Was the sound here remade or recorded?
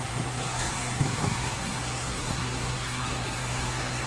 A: remade